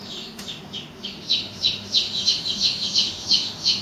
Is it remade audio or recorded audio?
remade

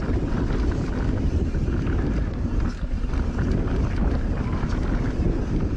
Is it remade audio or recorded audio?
recorded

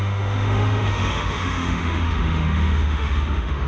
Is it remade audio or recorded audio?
remade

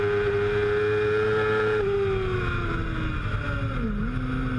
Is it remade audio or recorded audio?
recorded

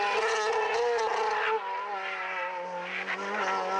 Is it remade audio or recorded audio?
recorded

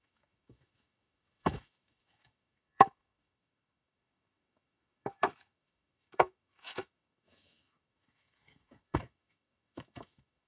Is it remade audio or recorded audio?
remade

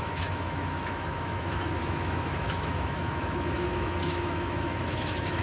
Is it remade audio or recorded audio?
remade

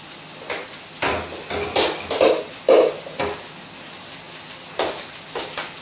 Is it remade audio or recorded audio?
recorded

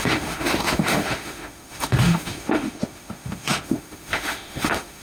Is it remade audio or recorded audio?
remade